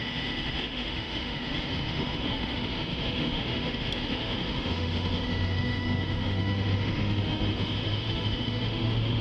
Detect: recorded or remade remade